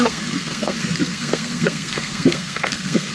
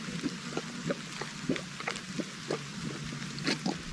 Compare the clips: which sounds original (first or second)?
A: second